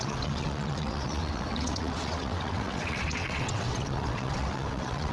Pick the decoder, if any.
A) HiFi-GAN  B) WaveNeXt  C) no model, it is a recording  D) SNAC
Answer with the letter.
B